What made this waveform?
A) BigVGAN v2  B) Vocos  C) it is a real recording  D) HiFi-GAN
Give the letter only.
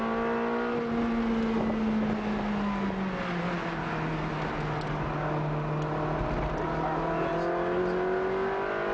C